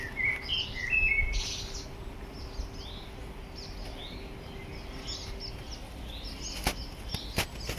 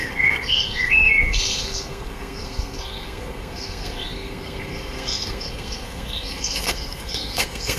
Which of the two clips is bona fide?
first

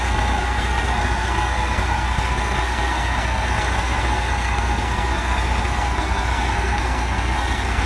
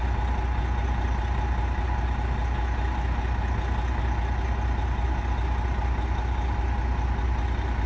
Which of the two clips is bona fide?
second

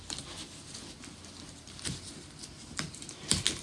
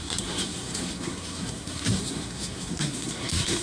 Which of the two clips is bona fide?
first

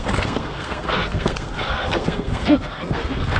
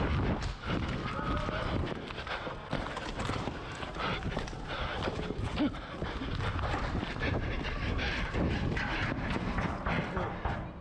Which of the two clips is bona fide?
second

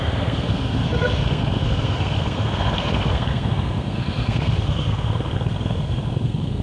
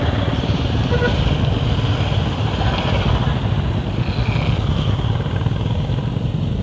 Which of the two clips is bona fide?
second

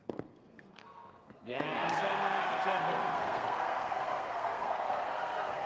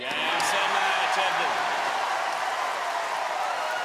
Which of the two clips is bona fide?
second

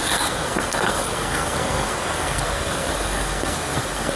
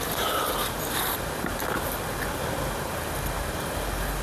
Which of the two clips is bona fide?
second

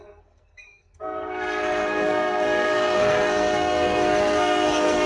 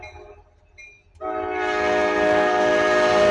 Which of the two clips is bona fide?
second